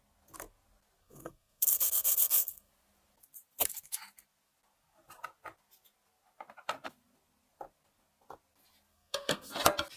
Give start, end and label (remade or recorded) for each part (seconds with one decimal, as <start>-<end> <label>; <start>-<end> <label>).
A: 0.0-1.0 recorded; 1.0-2.7 remade; 2.7-8.9 recorded; 8.9-9.5 remade; 9.5-10.0 recorded